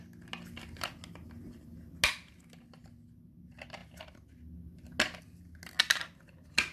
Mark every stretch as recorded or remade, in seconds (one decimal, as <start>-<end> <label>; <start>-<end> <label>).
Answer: 0.0-6.7 recorded